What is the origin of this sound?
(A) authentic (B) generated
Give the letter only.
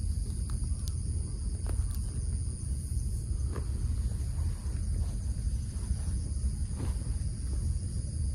A